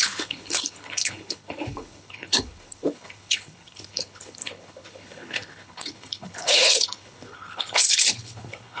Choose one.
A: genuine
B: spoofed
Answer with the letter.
B